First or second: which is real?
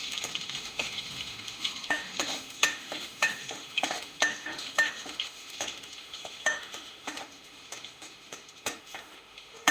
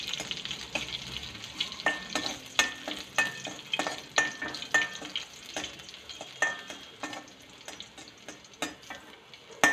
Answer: second